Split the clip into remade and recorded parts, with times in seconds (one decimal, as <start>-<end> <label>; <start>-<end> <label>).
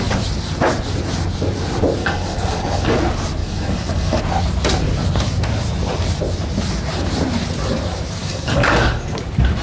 0.0-2.0 recorded; 2.0-3.0 remade; 3.0-3.4 recorded; 3.4-4.2 remade; 4.2-8.2 recorded; 8.2-9.2 remade; 9.2-9.6 recorded